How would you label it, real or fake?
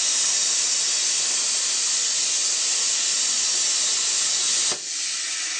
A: real